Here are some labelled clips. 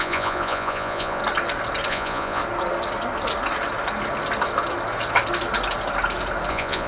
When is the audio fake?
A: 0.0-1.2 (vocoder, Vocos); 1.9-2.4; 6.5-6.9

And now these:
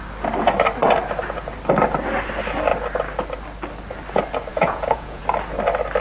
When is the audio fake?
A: 4.5-5.2 (vocoder, Vocos)

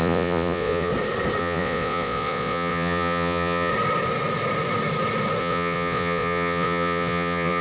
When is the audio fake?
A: 0.0-0.9 (vocoder, Vocos); 1.4-3.7; 5.4-7.6

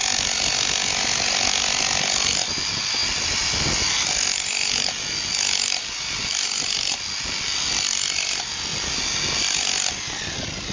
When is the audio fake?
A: none